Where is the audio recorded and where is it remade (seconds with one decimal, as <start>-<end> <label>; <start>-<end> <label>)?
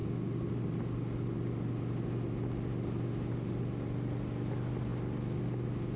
0.0-6.0 recorded